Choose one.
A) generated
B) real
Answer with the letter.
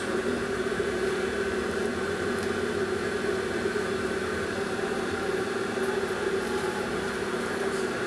A